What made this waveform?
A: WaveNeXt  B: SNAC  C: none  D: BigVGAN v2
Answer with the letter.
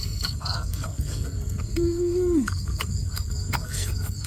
B